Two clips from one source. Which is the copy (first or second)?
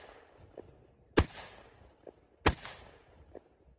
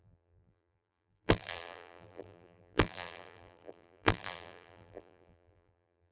second